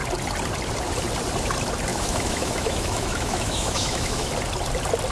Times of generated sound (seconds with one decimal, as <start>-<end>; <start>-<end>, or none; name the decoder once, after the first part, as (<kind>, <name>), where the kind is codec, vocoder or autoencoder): 1.9-4.3 (autoencoder, DAC-VAE)